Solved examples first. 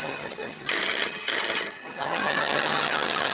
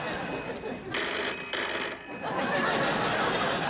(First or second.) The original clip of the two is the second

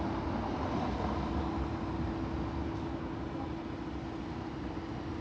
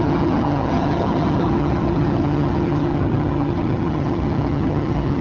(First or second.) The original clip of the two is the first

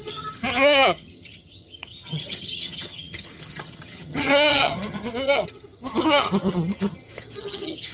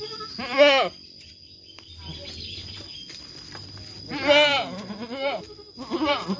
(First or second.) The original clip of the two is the second